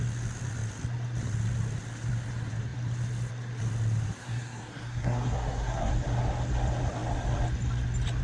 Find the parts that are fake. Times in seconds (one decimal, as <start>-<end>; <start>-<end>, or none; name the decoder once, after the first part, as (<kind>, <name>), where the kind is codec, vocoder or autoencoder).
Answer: 4.2-5.9 (codec, SNAC)